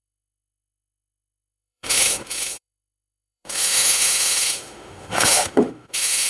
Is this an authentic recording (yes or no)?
no